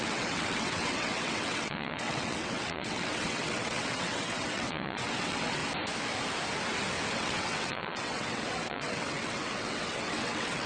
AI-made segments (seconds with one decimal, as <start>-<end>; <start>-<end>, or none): 0.0-5.6; 7.1-10.7